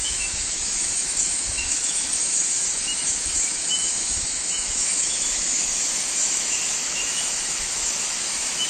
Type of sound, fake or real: fake